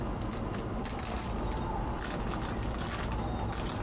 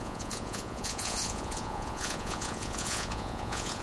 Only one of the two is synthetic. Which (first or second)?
second